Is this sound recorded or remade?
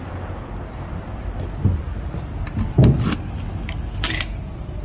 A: recorded